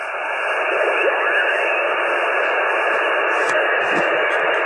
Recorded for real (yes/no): yes